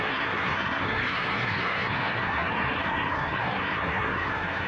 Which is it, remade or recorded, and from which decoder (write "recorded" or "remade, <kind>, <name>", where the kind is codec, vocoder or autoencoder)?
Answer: remade, codec, SNAC